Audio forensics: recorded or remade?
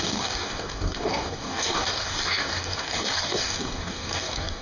remade